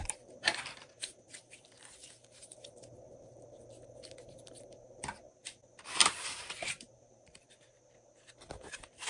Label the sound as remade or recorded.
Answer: remade